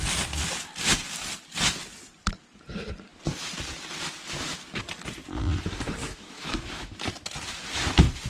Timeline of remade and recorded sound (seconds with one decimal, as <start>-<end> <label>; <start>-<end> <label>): 0.0-6.0 recorded; 6.0-6.9 remade; 6.9-8.3 recorded